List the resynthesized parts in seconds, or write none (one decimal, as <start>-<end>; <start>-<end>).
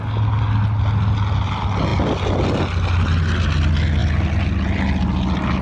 none